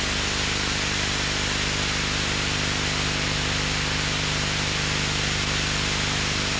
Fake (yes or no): no